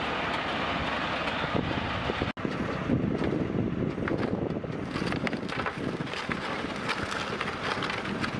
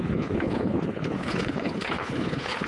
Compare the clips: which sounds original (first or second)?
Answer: first